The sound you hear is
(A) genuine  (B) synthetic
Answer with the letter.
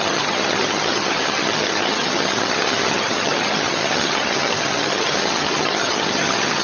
B